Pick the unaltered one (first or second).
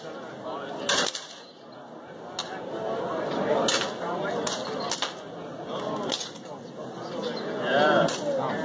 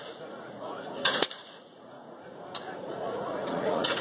first